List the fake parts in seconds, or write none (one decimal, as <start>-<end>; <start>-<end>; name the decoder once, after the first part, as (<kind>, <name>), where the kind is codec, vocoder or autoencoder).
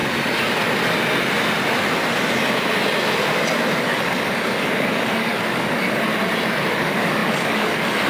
3.8-6.1 (codec, DAC); 6.7-8.1